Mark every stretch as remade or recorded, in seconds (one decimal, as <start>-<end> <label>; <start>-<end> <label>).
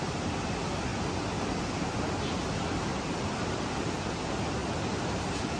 0.0-2.9 recorded; 2.9-3.9 remade; 3.9-4.6 recorded; 4.6-5.6 remade